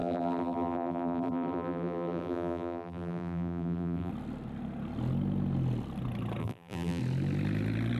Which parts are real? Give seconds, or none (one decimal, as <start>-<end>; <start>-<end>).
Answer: 4.1-6.4; 7.0-8.0